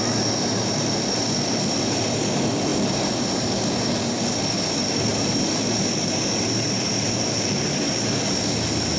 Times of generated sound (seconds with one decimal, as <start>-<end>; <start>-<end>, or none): 2.7-3.5; 5.1-7.6